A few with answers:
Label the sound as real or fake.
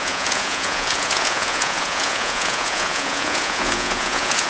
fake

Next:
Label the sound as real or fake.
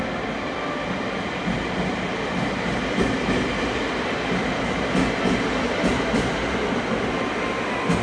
real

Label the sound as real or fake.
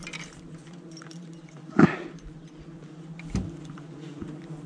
fake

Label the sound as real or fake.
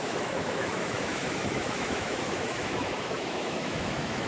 fake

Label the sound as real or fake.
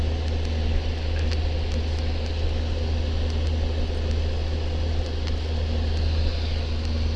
real